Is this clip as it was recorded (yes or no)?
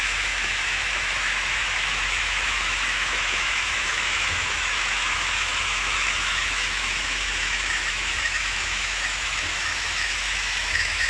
no